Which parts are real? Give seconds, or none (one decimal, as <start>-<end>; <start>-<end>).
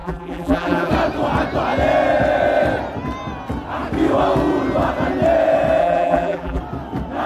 0.9-5.8; 6.6-7.3